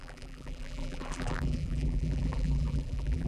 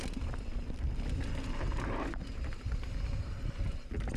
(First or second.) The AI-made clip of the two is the first